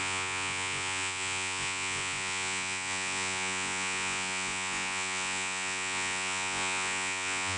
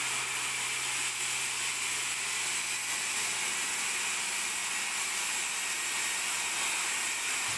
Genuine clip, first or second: second